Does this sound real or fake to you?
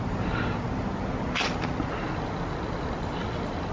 real